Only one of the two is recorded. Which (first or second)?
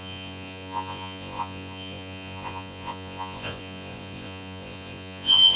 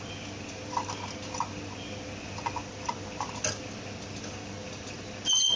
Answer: second